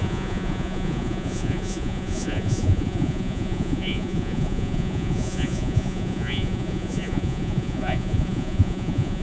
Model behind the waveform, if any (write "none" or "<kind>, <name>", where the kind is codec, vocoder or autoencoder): vocoder, Vocos